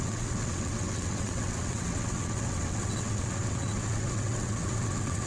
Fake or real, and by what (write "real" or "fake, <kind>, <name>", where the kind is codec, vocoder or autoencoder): fake, vocoder, WaveNeXt